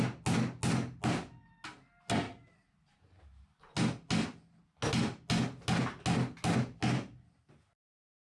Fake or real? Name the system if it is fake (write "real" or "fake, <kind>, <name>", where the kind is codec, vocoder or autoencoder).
real